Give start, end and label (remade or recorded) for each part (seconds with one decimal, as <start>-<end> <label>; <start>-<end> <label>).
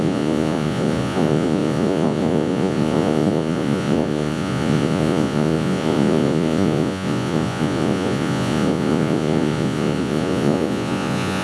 0.0-11.4 remade